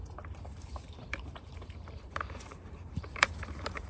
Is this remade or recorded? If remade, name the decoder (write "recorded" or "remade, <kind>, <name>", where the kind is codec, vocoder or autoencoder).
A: remade, vocoder, BigVGAN v2